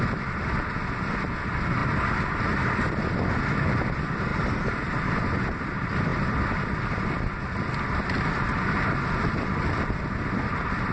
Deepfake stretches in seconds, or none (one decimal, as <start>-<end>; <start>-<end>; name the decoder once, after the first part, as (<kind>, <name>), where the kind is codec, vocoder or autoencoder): none